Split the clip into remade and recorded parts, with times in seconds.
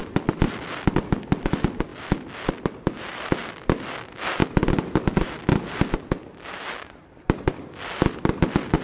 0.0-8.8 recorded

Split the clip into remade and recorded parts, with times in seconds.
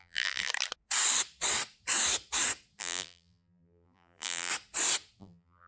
0.0-0.5 remade; 0.5-2.8 recorded; 2.8-4.5 remade; 4.5-5.2 recorded; 5.2-5.7 remade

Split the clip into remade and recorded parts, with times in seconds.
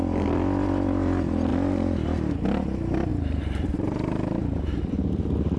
0.0-3.1 recorded; 3.1-4.9 remade; 4.9-5.6 recorded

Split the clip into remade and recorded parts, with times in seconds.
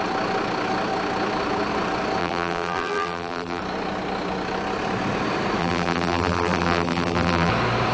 0.0-2.2 recorded; 2.2-3.6 remade; 3.6-5.6 recorded; 5.6-7.5 remade; 7.5-7.9 recorded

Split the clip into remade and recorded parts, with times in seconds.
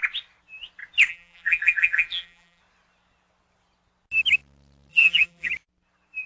0.0-1.1 recorded; 1.1-2.6 remade; 2.6-4.9 recorded; 4.9-5.5 remade; 5.5-6.3 recorded